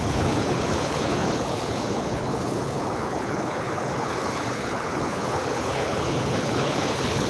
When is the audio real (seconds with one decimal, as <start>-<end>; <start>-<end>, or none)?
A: none